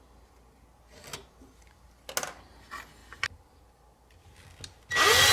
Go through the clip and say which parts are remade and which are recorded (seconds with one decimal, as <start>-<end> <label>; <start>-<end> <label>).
0.0-5.3 recorded